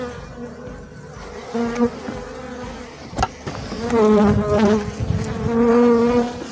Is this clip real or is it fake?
real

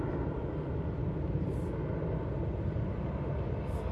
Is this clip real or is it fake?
real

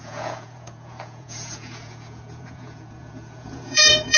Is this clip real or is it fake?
fake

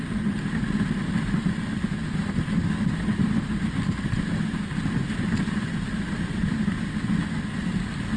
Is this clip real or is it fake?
real